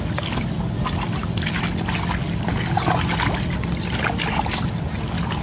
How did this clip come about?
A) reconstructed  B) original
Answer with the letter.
B